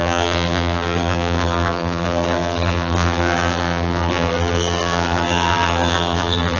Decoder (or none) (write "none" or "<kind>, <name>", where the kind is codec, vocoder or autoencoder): vocoder, BigVGAN v2